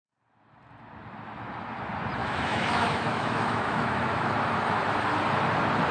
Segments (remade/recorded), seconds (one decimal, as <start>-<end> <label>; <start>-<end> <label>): 0.0-2.2 recorded; 2.2-4.3 remade; 4.3-5.9 recorded